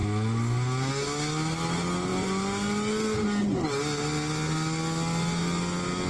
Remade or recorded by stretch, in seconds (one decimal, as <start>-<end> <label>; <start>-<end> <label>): 0.0-6.1 recorded